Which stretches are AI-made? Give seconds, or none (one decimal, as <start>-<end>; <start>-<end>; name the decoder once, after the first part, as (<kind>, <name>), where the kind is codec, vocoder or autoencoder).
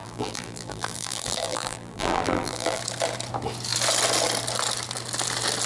0.0-2.8 (vocoder, BigVGAN v2)